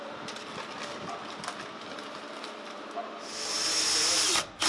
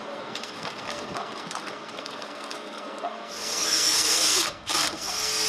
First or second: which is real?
first